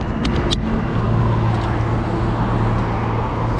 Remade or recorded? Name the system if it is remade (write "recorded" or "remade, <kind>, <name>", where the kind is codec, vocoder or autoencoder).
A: recorded